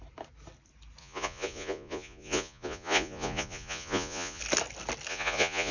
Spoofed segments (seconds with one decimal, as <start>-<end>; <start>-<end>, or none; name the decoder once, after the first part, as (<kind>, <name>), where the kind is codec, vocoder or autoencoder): 1.0-4.4 (vocoder, Vocos); 5.1-5.7